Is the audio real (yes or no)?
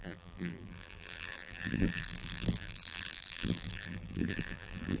no